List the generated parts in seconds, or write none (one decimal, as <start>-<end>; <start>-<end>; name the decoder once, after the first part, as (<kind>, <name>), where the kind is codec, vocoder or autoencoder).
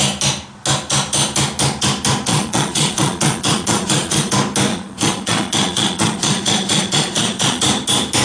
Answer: 2.3-4.3 (vocoder, Vocos); 4.7-7.6